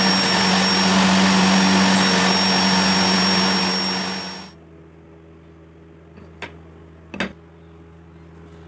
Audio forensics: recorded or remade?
recorded